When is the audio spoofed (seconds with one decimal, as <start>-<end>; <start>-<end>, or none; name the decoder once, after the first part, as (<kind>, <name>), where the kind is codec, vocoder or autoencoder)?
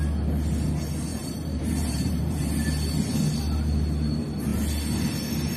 1.1-2.5 (vocoder, BigVGAN v2)